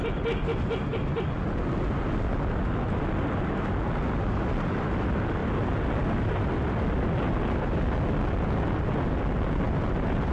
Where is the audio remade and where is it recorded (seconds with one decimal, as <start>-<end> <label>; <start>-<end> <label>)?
0.0-10.3 recorded